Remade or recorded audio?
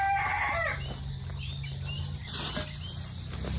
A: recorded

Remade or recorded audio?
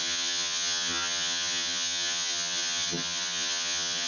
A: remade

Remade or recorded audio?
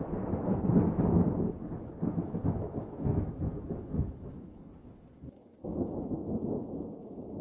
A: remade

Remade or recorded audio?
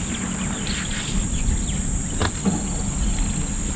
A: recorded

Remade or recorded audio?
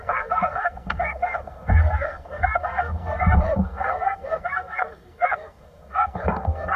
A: remade